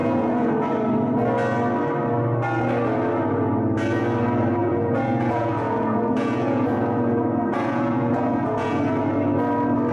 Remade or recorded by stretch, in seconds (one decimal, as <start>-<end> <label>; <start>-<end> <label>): 0.0-0.5 remade; 0.5-4.6 recorded; 4.6-8.8 remade; 8.8-9.9 recorded